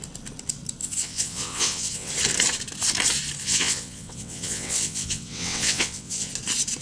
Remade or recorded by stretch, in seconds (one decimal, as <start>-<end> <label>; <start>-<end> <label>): 0.0-0.8 recorded; 0.8-2.1 remade; 2.1-3.4 recorded; 3.4-6.3 remade; 6.3-6.8 recorded